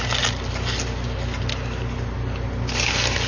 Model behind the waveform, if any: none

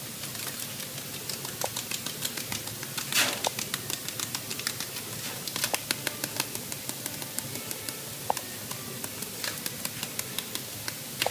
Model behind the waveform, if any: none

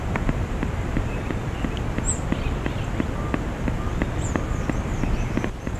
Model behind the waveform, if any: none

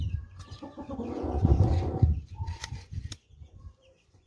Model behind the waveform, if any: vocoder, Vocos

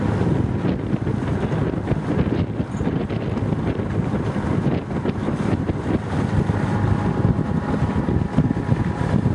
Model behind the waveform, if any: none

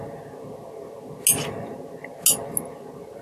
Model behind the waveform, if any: none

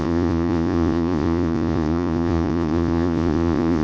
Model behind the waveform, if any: vocoder, Vocos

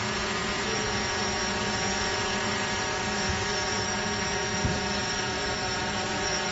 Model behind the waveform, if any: vocoder, Vocos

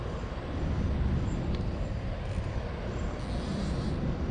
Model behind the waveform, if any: none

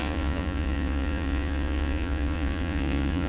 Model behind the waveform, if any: vocoder, Vocos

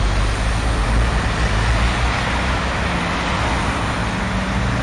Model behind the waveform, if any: none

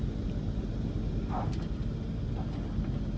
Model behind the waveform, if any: none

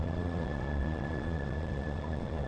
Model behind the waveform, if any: vocoder, Vocos